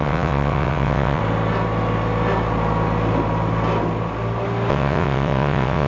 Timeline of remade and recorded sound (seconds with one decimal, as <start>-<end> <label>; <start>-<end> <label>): 0.0-1.2 remade; 1.2-4.7 recorded; 4.7-5.9 remade